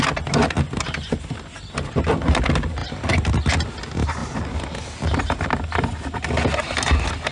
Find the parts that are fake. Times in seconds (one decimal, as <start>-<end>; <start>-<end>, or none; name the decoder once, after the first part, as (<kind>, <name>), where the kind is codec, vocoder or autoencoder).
none

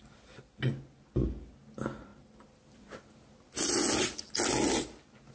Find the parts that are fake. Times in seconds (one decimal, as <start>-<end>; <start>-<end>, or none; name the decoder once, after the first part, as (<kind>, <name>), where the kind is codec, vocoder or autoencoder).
none

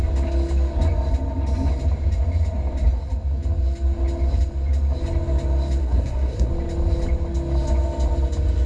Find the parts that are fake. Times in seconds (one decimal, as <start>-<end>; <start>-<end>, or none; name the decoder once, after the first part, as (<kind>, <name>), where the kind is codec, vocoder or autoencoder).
5.8-6.5 (codec, SNAC)

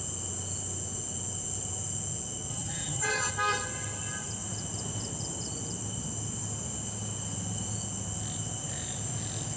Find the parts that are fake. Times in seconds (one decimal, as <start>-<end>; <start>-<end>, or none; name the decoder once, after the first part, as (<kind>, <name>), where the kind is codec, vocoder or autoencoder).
2.5-3.3 (vocoder, HiFi-GAN)